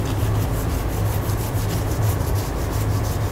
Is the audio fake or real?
real